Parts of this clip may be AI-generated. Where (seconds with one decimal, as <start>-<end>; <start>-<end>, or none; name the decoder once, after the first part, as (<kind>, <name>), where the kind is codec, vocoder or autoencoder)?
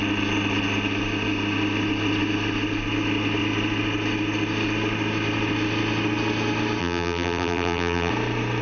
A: 6.8-8.1 (vocoder, BigVGAN v2)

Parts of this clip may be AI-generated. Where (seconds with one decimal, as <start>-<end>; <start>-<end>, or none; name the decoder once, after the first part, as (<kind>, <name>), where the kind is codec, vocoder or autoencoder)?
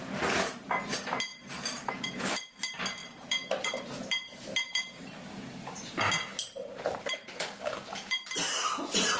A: 1.3-1.9 (vocoder, BigVGAN v2); 3.0-5.0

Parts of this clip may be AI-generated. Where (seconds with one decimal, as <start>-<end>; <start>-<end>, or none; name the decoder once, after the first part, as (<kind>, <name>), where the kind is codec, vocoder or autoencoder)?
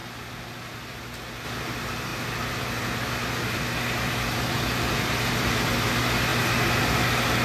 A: none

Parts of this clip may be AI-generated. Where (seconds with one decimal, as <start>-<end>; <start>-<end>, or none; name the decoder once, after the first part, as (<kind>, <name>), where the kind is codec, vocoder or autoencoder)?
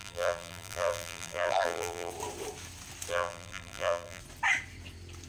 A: 0.0-2.1 (vocoder, BigVGAN v2); 3.1-4.2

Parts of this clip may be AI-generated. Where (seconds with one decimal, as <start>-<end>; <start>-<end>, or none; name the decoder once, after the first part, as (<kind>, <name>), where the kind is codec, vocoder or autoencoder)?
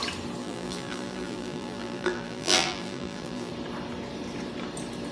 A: 0.4-3.5 (vocoder, BigVGAN v2)